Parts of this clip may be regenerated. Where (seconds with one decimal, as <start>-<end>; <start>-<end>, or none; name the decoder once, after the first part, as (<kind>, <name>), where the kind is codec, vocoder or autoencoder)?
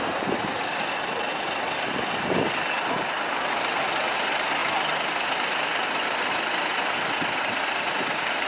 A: none